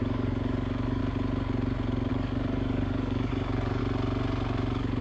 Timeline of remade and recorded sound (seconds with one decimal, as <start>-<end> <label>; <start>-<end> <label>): 0.0-1.0 remade; 1.0-2.1 recorded; 2.1-3.8 remade; 3.8-5.0 recorded